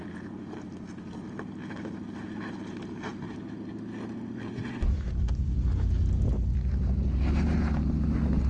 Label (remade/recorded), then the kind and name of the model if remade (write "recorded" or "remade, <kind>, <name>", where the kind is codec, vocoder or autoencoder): recorded